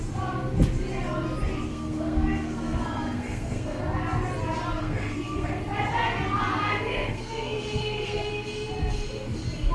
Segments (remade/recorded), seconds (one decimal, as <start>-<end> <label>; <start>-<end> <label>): 0.0-1.7 recorded; 1.7-3.8 remade; 3.8-4.8 recorded; 4.8-5.6 remade; 5.6-6.5 recorded; 6.5-8.3 remade; 8.3-9.7 recorded